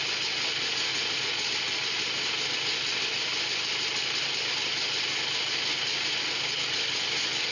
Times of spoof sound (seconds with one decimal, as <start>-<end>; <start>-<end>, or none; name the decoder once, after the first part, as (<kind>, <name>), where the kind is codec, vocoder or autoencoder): 0.9-1.5 (vocoder, Vocos)

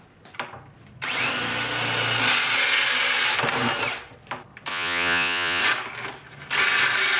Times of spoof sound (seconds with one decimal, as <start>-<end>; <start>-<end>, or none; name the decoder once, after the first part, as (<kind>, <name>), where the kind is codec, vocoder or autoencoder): 4.7-5.6 (vocoder, Vocos)

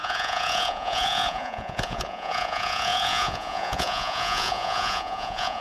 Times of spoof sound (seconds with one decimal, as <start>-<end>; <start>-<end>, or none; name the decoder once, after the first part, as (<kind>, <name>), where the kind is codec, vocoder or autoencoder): 0.0-5.6 (vocoder, Vocos)